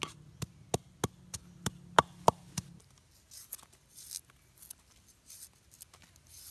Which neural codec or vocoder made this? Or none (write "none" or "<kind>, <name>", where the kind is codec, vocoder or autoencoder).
none